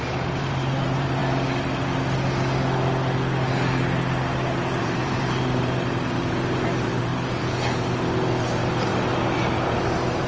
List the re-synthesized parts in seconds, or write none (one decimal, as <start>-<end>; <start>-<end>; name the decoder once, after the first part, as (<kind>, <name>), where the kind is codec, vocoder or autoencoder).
0.0-1.2 (vocoder, BigVGAN v2); 4.8-7.1; 8.4-8.9; 9.8-10.3